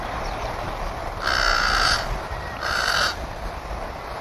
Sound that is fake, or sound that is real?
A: real